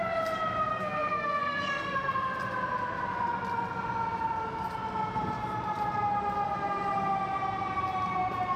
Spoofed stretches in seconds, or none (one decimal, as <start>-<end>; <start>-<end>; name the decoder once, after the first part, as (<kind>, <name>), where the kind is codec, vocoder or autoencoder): 0.7-2.1 (codec, SNAC)